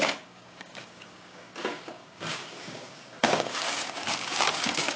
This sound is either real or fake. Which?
fake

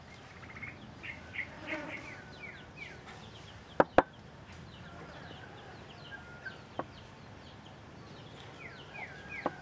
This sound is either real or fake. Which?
real